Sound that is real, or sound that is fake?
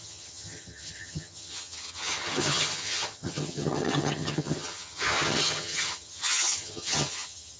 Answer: fake